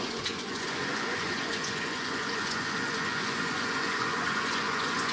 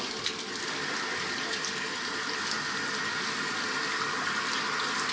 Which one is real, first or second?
second